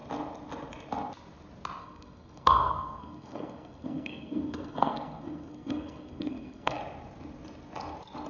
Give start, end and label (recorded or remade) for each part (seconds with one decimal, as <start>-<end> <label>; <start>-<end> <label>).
0.0-1.8 recorded; 1.8-6.8 remade; 6.8-8.3 recorded